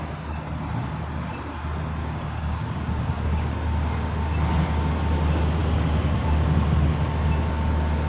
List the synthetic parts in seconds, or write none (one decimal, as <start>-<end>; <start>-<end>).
2.0-3.5